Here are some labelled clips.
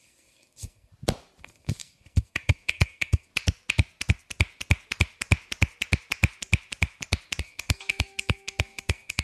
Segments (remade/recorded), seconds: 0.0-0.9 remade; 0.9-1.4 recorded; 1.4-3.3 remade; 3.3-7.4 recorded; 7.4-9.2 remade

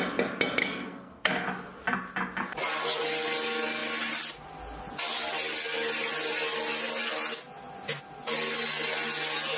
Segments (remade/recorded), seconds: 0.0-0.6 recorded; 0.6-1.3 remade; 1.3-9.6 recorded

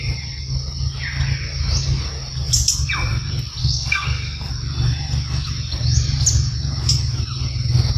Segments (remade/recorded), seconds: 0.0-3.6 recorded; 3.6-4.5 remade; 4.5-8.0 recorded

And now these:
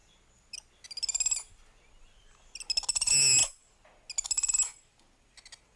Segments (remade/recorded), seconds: 0.0-5.8 recorded

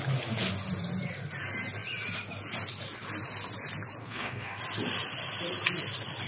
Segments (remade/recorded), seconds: 0.0-4.0 recorded; 4.0-4.6 remade; 4.6-6.3 recorded